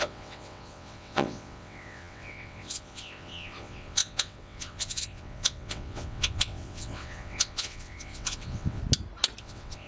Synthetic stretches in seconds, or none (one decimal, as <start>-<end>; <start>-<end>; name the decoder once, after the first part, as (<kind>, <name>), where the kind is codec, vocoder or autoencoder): 0.0-8.8 (vocoder, WaveNeXt); 9.4-9.9